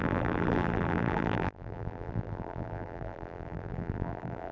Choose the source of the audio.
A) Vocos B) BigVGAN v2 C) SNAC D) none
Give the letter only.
B